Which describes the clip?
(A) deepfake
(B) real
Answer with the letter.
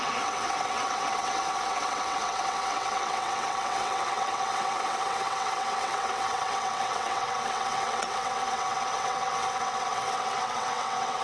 A